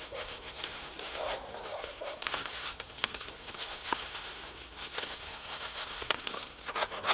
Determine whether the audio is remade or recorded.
remade